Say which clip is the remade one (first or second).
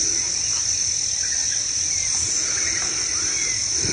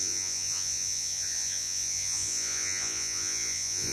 second